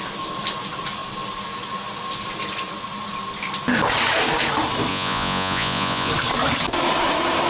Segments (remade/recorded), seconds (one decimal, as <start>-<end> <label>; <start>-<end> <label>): 0.0-4.9 recorded; 4.9-6.1 remade; 6.1-7.5 recorded